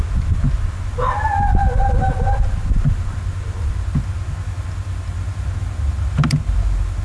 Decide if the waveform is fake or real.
real